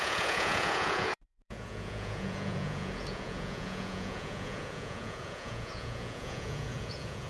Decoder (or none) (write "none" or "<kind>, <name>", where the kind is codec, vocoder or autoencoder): vocoder, Vocos